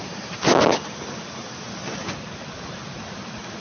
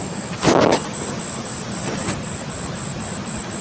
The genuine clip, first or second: first